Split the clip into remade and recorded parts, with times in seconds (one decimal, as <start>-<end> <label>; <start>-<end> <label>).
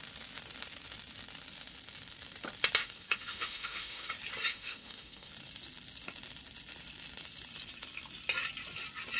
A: 0.0-2.8 recorded; 2.8-4.1 remade; 4.1-4.5 recorded; 4.5-5.3 remade; 5.3-9.2 recorded